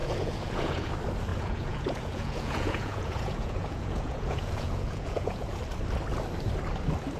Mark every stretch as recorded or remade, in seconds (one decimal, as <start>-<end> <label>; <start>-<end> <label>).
0.0-0.9 remade; 0.9-1.3 recorded; 1.3-5.6 remade; 5.6-7.2 recorded